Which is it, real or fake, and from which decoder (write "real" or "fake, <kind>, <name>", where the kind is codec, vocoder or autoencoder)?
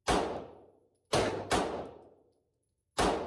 real